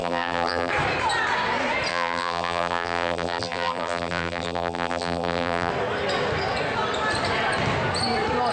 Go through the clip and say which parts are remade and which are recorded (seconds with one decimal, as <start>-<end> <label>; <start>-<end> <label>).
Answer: 0.0-0.7 remade; 0.7-1.9 recorded; 1.9-5.7 remade; 5.7-8.5 recorded